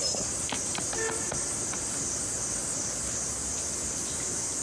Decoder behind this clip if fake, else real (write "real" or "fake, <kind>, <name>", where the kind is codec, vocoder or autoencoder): real